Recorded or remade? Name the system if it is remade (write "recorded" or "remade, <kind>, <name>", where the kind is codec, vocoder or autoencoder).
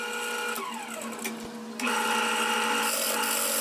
recorded